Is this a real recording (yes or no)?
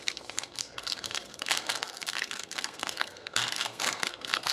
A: no